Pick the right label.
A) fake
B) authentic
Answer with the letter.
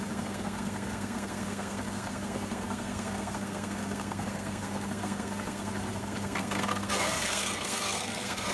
A